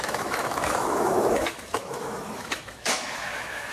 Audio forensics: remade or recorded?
remade